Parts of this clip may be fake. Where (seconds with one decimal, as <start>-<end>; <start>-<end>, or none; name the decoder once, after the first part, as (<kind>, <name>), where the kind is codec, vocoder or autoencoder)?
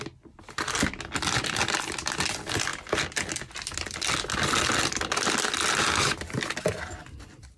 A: none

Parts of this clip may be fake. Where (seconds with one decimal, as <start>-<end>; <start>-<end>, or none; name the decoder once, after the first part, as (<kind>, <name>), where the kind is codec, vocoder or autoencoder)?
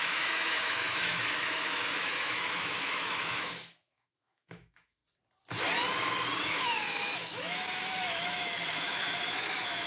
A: 0.0-5.0 (autoencoder, DAC-VAE); 6.4-9.9